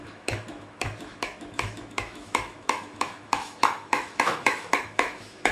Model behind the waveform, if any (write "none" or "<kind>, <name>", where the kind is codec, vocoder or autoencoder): autoencoder, DAC-VAE